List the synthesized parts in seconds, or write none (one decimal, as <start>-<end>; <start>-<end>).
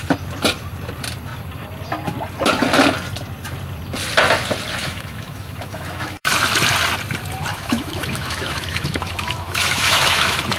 4.8-6.3; 7.5-10.6